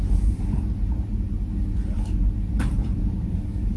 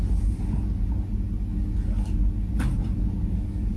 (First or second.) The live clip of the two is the second